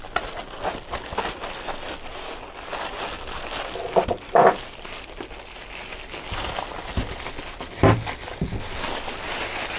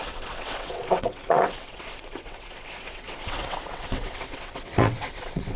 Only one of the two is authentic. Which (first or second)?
first